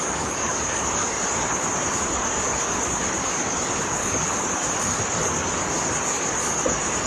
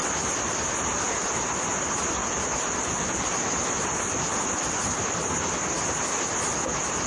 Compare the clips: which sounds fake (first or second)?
first